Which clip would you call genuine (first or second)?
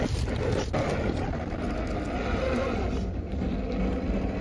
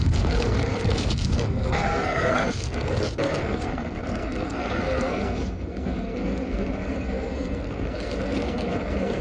first